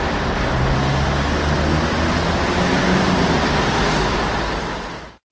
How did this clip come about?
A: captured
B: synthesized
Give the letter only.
A